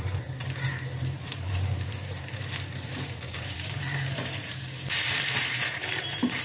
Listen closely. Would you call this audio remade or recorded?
remade